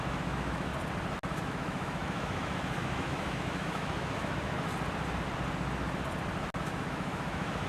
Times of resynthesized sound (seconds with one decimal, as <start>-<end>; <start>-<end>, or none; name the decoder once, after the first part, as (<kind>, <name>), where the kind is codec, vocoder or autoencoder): 0.0-0.7 (autoencoder, DAC-VAE); 1.4-4.7; 6.6-7.7